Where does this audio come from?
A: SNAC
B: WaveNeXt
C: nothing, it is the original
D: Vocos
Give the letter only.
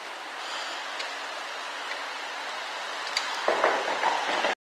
C